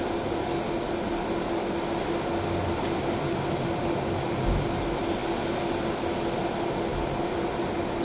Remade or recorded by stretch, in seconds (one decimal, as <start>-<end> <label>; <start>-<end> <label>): 0.0-8.0 recorded